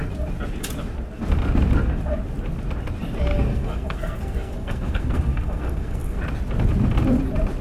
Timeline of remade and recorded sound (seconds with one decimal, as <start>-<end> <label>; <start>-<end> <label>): 0.0-3.3 recorded; 3.3-6.2 remade; 6.2-7.6 recorded